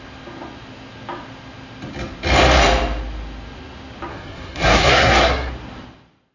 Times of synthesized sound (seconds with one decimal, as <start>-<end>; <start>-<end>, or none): 4.1-5.5